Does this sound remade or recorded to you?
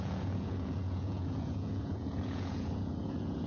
remade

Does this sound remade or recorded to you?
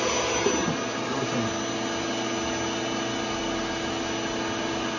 recorded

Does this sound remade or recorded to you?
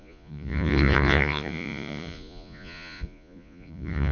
remade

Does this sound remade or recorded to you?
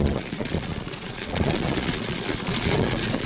remade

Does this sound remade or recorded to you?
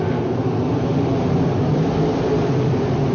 recorded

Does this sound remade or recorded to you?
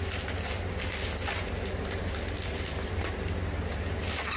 recorded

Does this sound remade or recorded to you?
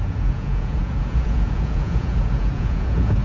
remade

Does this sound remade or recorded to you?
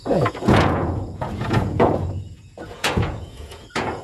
remade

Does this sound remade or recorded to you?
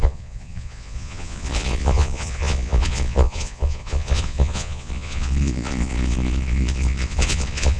remade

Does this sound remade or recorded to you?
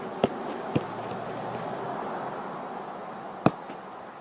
recorded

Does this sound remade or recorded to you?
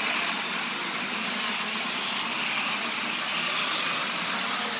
recorded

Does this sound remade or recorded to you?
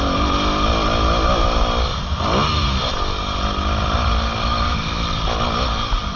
recorded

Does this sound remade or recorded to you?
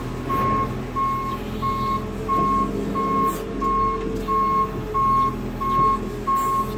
recorded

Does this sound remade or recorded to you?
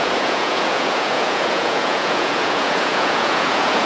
remade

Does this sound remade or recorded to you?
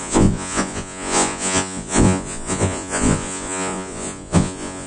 remade